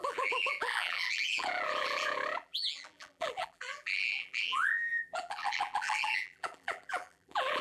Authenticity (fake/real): fake